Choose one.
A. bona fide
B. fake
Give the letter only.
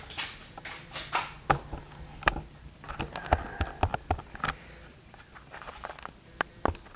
A